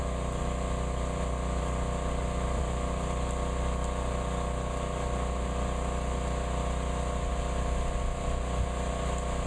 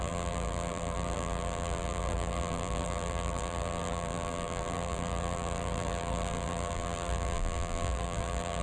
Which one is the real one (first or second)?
first